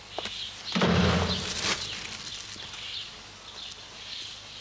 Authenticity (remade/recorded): recorded